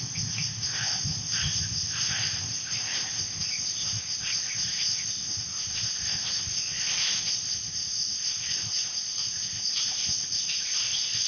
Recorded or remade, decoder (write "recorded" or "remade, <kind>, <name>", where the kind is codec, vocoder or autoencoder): remade, codec, ZipCodec